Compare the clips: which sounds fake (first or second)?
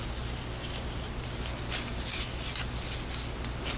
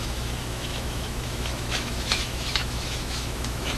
second